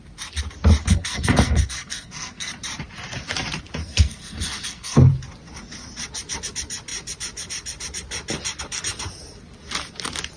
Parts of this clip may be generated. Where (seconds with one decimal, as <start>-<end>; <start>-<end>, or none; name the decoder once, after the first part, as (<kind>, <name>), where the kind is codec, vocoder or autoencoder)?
0.8-2.5 (codec, SNAC); 3.8-5.1